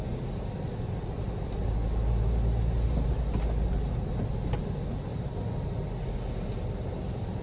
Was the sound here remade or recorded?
recorded